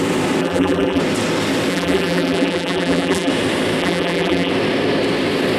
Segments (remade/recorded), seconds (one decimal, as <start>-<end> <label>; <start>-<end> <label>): 0.0-0.4 recorded; 0.4-1.0 remade; 1.0-1.7 recorded; 1.7-3.3 remade; 3.3-3.8 recorded; 3.8-4.5 remade; 4.5-5.6 recorded